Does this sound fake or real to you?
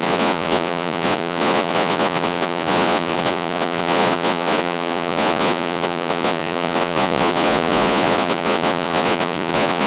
fake